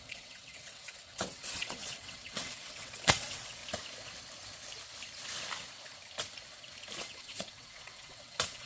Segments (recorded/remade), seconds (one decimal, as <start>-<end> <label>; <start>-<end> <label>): 0.0-3.6 remade; 3.6-7.0 recorded; 7.0-8.7 remade